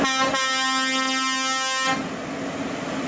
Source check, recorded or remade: recorded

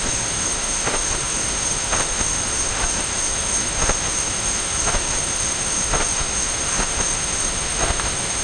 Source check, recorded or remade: remade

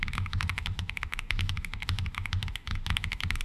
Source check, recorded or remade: remade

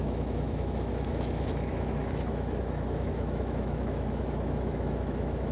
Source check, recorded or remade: remade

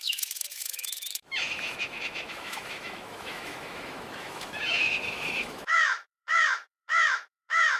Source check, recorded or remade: remade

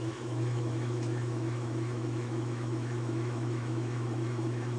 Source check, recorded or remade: remade